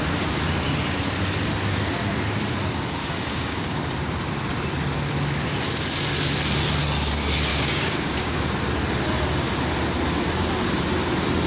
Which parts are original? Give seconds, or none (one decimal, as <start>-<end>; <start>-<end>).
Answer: 0.0-3.0; 3.8-7.5; 8.5-11.5